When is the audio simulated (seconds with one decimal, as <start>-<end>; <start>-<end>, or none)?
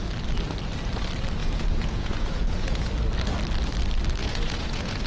1.4-2.9; 4.2-5.1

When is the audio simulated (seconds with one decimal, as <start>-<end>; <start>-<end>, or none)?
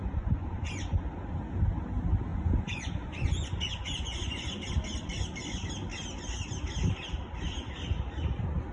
0.0-1.0; 2.3-4.7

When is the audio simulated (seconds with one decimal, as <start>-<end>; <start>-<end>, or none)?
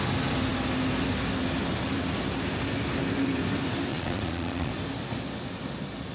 3.9-4.7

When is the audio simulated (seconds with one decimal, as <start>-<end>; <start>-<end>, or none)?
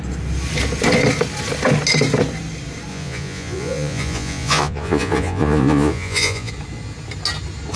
2.9-6.5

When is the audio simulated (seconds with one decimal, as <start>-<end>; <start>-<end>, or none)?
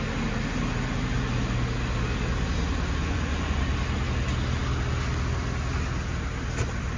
3.0-3.6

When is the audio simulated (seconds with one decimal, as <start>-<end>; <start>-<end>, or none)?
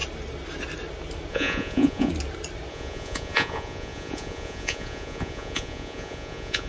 1.3-2.1; 2.7-6.7